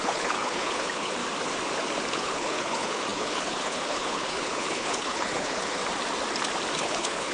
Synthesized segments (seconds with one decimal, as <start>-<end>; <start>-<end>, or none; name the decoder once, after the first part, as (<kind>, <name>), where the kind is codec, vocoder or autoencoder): 0.0-1.2 (codec, HILCodec); 2.1-5.8; 6.8-7.3